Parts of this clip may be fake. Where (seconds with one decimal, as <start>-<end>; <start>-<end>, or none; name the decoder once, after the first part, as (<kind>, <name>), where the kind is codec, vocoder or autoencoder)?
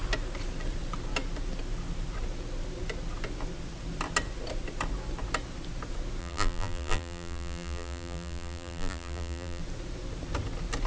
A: 6.2-9.6 (vocoder, BigVGAN v2)